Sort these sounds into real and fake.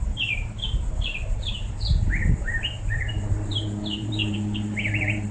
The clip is fake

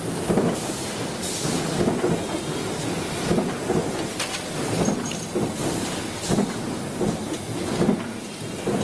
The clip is real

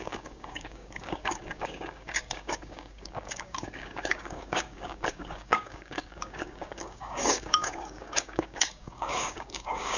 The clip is fake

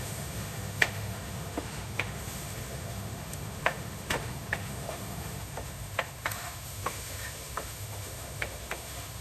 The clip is fake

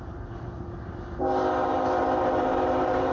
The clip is fake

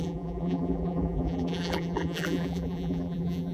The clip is fake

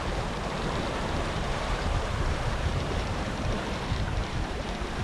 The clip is fake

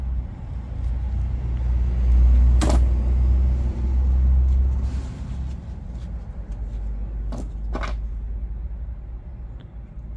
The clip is real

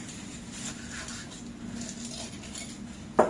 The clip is real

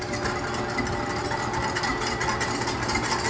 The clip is real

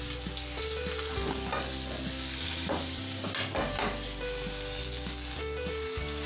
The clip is real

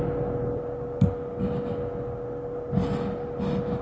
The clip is real